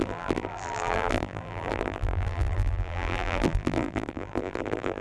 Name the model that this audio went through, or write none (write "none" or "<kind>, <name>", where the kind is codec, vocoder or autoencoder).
vocoder, BigVGAN v2